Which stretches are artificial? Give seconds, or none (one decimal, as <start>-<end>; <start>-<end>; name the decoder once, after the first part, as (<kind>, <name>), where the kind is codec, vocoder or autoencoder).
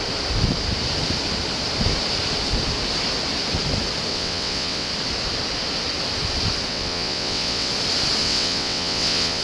4.1-4.9 (vocoder, WaveNeXt); 6.7-7.7; 8.2-9.4